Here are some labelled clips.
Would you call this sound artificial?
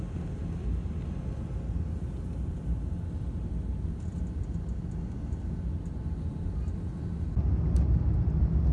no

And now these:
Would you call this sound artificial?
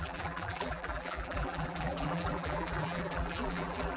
yes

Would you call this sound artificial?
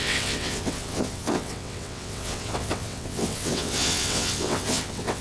yes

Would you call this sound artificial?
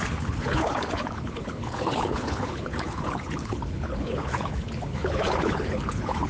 yes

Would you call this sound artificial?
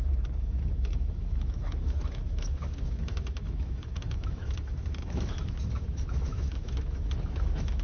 yes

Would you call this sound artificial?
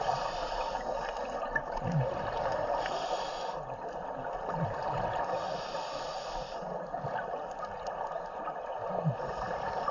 no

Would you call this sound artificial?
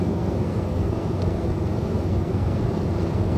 yes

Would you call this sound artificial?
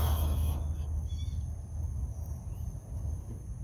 no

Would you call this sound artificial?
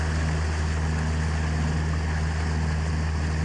no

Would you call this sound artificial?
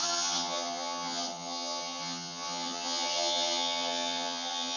yes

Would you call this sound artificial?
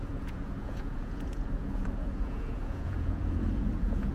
yes